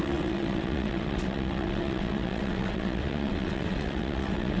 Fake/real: fake